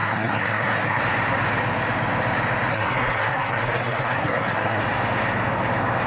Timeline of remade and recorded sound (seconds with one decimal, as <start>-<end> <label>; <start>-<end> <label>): 0.0-1.0 remade; 1.0-2.7 recorded; 2.7-4.8 remade; 4.8-6.1 recorded